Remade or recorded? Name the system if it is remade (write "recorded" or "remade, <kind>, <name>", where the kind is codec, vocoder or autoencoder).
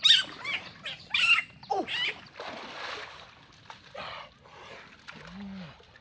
recorded